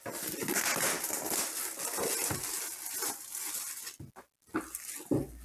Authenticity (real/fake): real